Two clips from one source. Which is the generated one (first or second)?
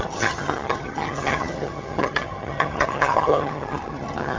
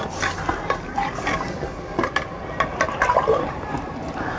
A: first